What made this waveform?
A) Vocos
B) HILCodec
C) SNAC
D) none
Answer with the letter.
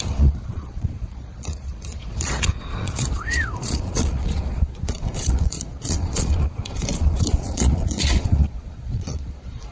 A